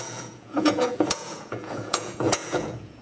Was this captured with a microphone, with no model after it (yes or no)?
no